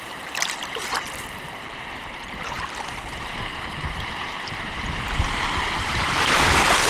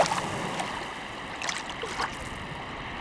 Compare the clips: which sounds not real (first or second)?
first